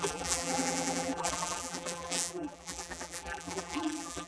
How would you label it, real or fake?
fake